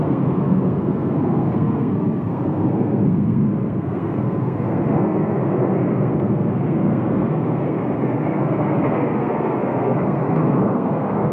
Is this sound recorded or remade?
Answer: remade